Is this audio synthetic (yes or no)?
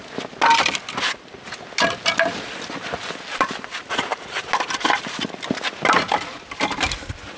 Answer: no